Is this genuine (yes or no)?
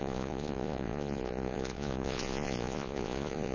no